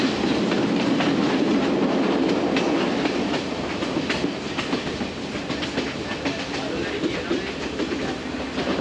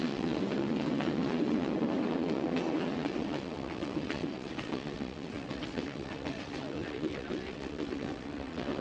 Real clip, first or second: first